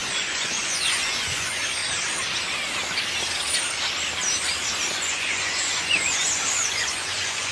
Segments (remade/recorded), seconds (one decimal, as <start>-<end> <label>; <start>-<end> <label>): 0.0-1.8 remade; 1.8-4.9 recorded; 4.9-7.5 remade